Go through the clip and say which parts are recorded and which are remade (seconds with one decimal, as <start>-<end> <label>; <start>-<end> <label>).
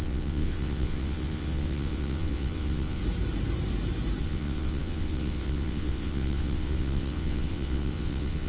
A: 0.0-3.0 remade; 3.0-4.2 recorded; 4.2-8.5 remade